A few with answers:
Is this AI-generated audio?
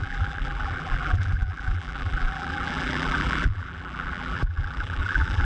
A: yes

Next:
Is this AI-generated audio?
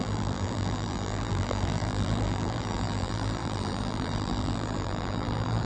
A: yes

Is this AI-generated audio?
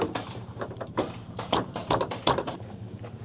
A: yes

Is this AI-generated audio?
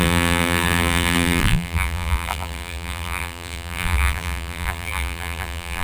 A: yes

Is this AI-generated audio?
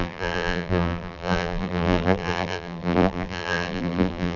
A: yes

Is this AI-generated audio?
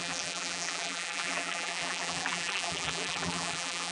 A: yes